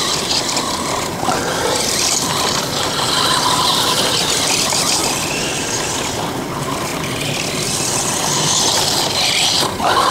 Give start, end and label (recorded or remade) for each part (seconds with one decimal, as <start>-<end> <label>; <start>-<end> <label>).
0.0-5.0 remade; 5.0-6.0 recorded; 6.0-6.9 remade; 6.9-8.6 recorded; 8.6-10.1 remade